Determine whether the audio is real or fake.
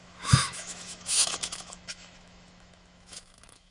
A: fake